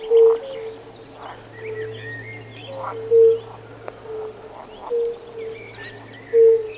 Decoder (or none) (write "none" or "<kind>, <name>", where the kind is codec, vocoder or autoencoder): none